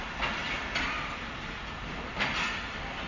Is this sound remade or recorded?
recorded